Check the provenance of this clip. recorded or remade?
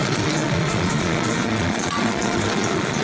remade